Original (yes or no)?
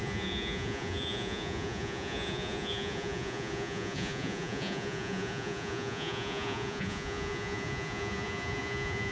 no